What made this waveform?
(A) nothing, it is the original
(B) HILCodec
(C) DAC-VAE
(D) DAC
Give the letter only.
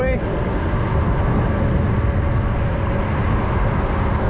A